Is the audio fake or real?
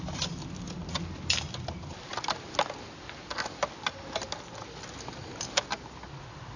real